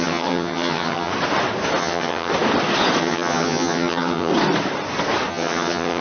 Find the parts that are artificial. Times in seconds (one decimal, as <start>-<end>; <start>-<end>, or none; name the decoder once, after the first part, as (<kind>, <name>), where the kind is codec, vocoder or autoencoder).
0.0-1.1 (vocoder, HiFi-GAN); 1.8-2.3; 3.0-4.3; 5.3-6.0